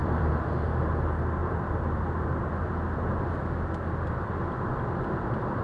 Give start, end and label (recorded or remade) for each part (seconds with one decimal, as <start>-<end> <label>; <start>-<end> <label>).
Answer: 0.0-0.5 remade; 0.5-1.4 recorded; 1.4-4.8 remade; 4.8-5.6 recorded